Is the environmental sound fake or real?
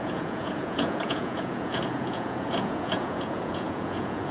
fake